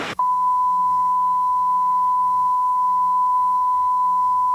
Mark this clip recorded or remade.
remade